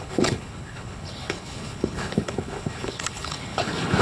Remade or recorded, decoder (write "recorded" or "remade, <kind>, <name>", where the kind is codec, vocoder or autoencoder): remade, codec, HILCodec